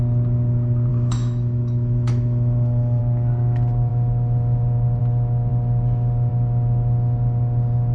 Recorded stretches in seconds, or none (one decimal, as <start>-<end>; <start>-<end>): 0.0-0.9; 3.0-7.9